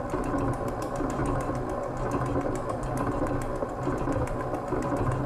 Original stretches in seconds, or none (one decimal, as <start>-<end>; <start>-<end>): 0.0-5.3